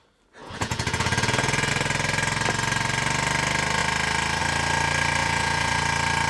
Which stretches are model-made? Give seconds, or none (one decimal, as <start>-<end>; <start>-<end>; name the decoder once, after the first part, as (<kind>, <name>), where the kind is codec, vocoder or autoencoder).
0.4-1.7 (vocoder, Vocos); 5.2-5.8

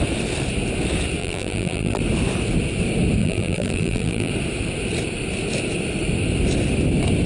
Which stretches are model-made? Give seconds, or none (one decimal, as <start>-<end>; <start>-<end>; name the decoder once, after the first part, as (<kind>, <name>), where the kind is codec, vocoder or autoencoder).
1.2-2.0 (vocoder, BigVGAN v2); 3.2-4.3

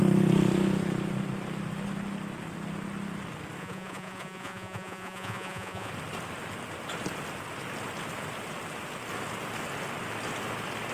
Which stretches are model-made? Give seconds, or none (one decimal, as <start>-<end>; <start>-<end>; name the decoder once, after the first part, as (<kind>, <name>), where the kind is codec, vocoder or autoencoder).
3.6-5.9 (vocoder, Vocos)

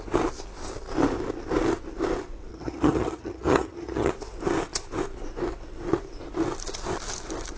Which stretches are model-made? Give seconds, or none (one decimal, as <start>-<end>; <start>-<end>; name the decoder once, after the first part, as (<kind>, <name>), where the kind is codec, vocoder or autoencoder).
2.5-4.1 (vocoder, HiFi-GAN)